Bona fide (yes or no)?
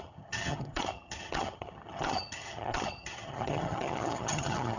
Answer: no